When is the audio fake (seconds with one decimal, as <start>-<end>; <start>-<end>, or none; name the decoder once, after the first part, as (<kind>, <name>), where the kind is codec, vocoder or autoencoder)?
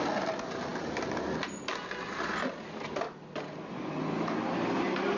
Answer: none